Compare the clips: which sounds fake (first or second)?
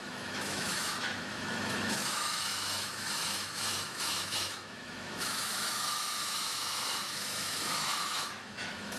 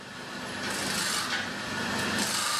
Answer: first